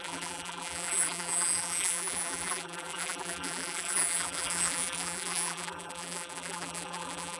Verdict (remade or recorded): remade